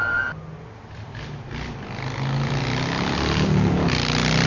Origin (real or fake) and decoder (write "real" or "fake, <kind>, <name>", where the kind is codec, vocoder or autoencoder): real